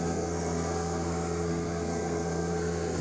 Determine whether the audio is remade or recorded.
remade